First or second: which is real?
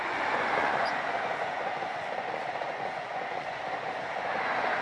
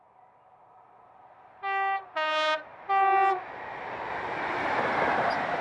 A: second